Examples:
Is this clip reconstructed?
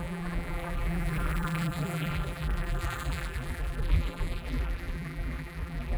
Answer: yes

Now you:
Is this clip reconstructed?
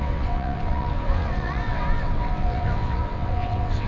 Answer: yes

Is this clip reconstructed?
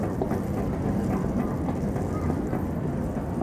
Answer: no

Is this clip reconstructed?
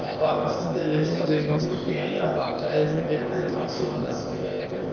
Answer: yes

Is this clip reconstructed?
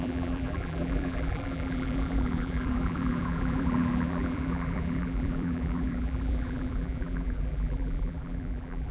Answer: yes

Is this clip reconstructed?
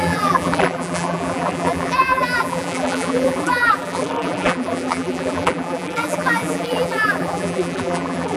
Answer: yes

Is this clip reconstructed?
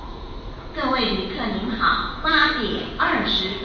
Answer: yes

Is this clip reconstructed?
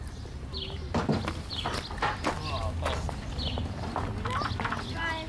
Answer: no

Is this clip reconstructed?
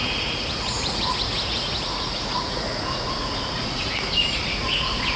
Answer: yes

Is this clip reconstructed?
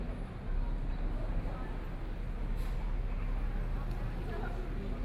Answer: no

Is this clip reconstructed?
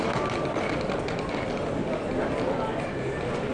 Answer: no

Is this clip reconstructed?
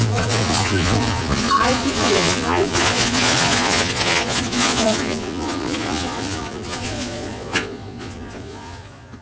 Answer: yes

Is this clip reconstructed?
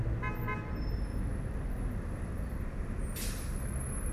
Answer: no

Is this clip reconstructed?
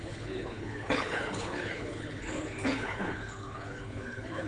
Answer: yes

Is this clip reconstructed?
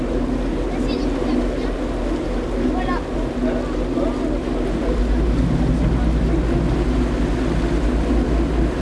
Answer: no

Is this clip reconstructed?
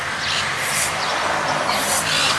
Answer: no